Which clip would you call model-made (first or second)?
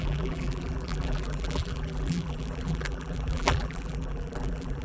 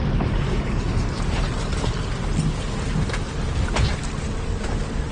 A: first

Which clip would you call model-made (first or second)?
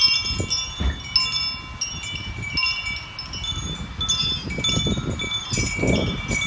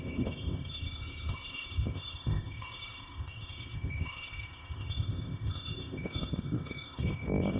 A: second